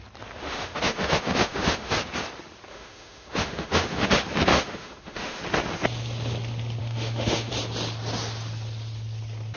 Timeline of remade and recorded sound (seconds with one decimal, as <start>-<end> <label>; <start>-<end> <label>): 0.0-0.4 recorded; 0.4-1.9 remade; 1.9-2.7 recorded; 2.7-4.1 remade; 4.1-4.5 recorded; 4.5-5.4 remade; 5.4-6.8 recorded; 6.8-7.5 remade; 7.5-9.6 recorded